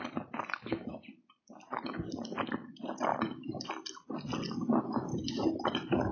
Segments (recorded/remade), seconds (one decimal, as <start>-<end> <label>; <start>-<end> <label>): 0.0-0.9 recorded; 0.9-1.9 remade; 1.9-3.1 recorded; 3.1-3.7 remade; 3.7-5.1 recorded; 5.1-6.1 remade

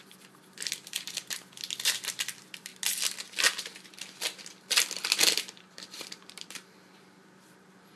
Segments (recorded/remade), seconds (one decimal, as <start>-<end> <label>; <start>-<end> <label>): 0.0-2.7 remade; 2.7-4.7 recorded; 4.7-8.0 remade